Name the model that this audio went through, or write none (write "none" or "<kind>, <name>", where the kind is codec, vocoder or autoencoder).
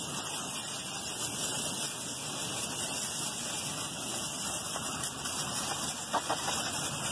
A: none